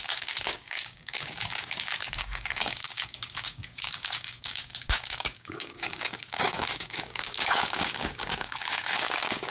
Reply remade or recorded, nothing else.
remade